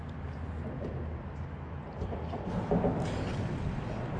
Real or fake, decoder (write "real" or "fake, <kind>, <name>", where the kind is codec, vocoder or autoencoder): real